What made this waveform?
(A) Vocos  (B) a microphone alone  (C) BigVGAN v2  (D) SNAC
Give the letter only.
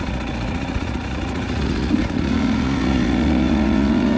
A